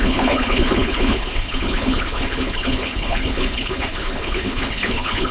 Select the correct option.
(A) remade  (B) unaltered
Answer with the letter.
A